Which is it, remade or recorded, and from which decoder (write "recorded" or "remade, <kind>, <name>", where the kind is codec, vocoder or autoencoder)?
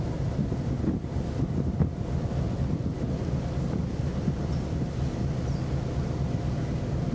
recorded